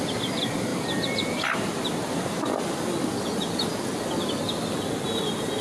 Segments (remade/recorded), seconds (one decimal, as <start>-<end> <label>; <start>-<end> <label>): 0.0-5.6 recorded